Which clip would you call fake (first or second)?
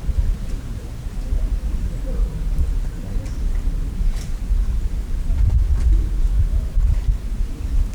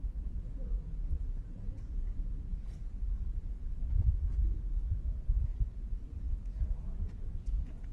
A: second